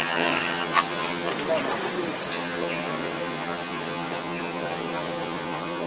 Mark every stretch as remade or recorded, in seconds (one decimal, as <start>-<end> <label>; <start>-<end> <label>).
0.0-1.3 remade; 1.3-2.3 recorded; 2.3-5.9 remade